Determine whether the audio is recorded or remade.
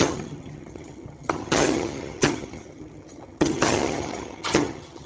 remade